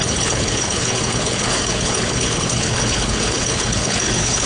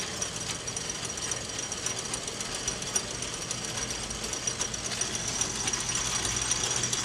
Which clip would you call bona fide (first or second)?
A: second